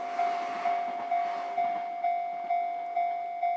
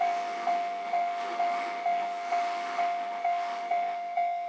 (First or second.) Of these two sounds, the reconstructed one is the second